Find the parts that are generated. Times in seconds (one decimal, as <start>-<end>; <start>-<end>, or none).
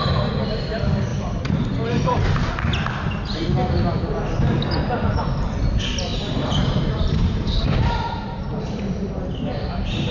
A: 1.1-2.5; 6.1-10.1